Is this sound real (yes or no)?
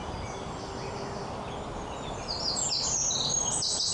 yes